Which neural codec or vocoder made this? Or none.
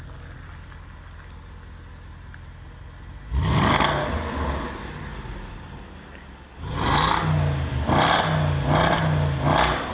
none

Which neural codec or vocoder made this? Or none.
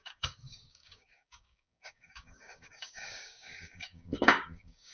codec, DAC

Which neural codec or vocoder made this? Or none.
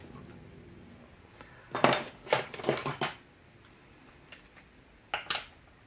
none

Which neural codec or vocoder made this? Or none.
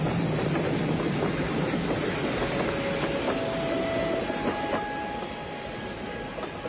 none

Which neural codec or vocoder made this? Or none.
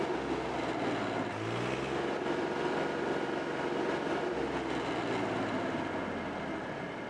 none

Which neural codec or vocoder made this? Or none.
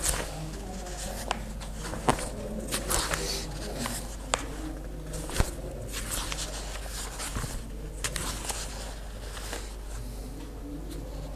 none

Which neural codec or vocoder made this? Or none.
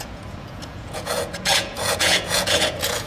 vocoder, Vocos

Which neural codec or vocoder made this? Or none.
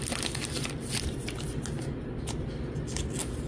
none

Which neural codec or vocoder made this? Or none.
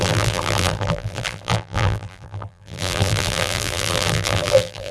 vocoder, BigVGAN v2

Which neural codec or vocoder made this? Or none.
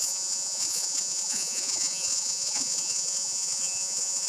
vocoder, Vocos